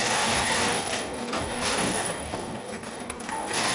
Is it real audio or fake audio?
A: fake